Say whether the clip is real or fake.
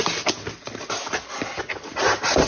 real